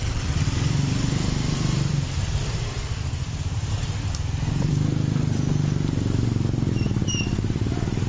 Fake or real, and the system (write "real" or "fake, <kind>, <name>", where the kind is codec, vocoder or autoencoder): fake, vocoder, BigVGAN v2